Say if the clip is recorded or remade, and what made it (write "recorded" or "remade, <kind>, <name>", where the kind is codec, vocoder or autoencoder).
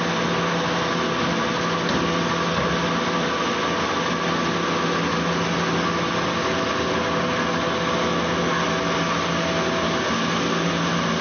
recorded